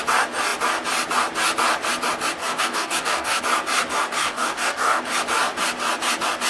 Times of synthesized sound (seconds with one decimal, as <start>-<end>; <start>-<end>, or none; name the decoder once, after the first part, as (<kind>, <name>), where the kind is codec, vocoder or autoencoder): 2.4-3.4 (codec, DAC); 4.2-5.0